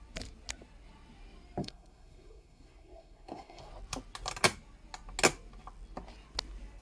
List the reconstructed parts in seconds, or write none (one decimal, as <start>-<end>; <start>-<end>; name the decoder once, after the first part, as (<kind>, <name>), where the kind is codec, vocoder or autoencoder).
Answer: 1.6-3.7 (codec, SNAC)